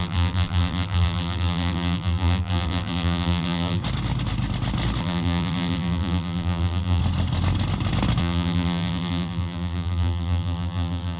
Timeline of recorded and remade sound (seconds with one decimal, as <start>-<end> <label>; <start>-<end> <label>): 0.0-3.8 remade; 3.8-5.0 recorded; 5.0-7.0 remade; 7.0-8.2 recorded; 8.2-11.2 remade